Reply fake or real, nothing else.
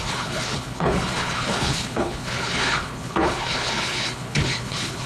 fake